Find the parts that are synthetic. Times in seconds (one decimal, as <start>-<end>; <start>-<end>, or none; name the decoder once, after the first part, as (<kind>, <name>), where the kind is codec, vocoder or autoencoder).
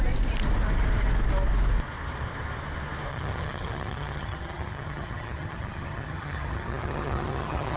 3.1-7.8 (vocoder, HiFi-GAN)